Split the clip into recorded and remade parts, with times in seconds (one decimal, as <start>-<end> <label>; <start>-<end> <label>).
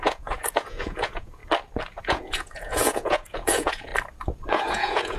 0.0-1.4 remade; 1.4-2.0 recorded; 2.0-3.9 remade; 3.9-4.5 recorded; 4.5-5.2 remade